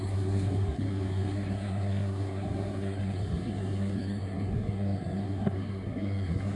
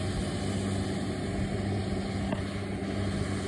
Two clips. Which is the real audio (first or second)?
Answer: second